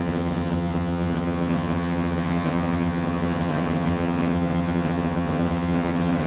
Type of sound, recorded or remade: remade